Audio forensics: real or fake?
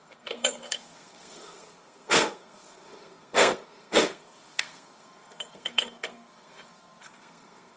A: fake